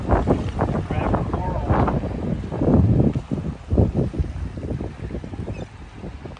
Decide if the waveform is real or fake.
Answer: real